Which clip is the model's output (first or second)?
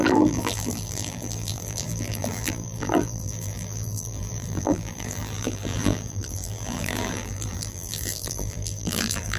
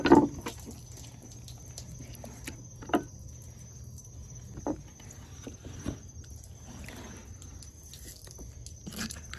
first